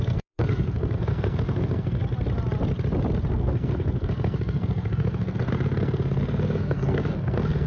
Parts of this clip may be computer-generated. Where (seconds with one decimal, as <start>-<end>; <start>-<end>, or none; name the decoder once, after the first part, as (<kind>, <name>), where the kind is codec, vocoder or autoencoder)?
0.0-2.0 (codec, SNAC); 3.3-7.7